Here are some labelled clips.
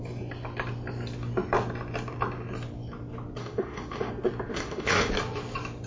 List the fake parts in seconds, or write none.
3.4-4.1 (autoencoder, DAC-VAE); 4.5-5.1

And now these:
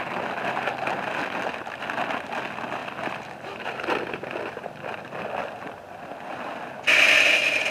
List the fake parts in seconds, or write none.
2.8-5.1 (vocoder, BigVGAN v2)

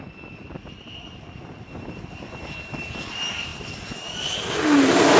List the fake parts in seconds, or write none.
none